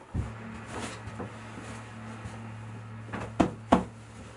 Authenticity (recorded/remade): recorded